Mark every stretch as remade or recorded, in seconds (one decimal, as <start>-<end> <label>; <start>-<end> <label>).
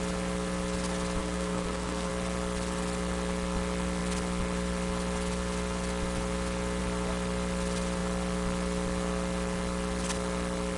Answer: 0.0-1.2 recorded; 1.2-2.1 remade; 2.1-10.8 recorded